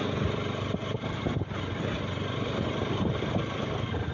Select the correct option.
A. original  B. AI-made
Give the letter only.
A